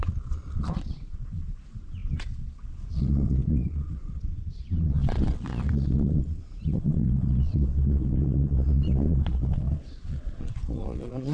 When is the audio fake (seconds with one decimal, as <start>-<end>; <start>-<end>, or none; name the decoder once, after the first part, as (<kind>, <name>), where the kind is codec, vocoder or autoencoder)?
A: 0.0-11.3 (vocoder, Vocos)